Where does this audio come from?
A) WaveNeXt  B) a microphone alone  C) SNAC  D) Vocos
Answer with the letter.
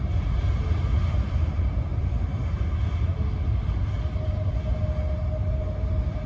B